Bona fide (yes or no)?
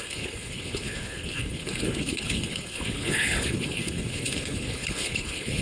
no